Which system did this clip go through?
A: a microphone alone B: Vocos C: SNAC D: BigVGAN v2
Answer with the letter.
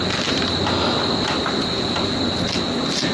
A